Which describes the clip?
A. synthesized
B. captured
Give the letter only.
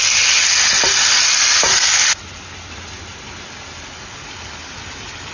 B